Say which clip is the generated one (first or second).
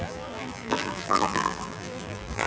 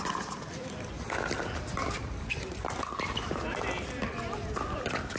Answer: first